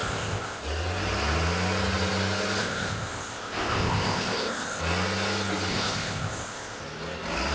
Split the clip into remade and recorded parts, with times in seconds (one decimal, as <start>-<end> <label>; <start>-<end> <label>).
0.0-0.6 remade; 0.6-2.6 recorded; 2.6-4.8 remade; 4.8-5.7 recorded; 5.7-6.8 remade; 6.8-7.5 recorded